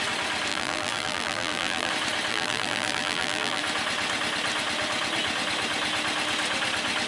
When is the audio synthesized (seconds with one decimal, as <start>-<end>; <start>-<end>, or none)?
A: 0.5-1.9; 2.3-3.6